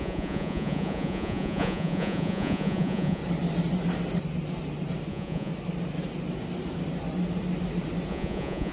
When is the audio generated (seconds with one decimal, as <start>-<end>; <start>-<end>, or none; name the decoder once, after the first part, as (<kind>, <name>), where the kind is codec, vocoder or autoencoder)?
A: 0.0-3.2 (vocoder, Vocos); 5.1-5.5; 8.1-8.7